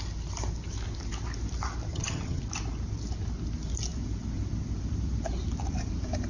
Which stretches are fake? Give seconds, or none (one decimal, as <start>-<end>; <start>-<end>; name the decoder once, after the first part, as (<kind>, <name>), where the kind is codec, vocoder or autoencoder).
1.9-2.4 (vocoder, HiFi-GAN)